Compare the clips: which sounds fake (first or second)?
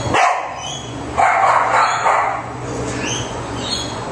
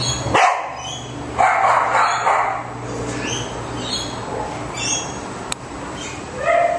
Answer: first